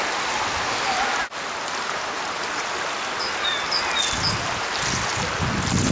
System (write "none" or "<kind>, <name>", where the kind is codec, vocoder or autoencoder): none